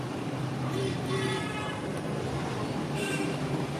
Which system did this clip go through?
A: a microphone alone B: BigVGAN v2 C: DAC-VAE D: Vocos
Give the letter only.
B